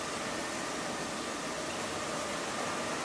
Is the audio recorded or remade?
recorded